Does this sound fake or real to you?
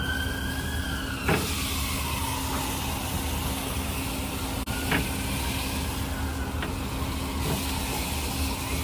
real